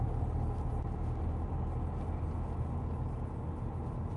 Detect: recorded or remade recorded